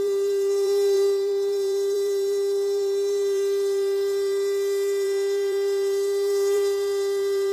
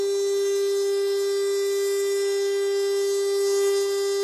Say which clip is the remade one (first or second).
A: first